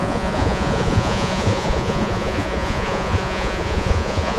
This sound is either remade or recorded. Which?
remade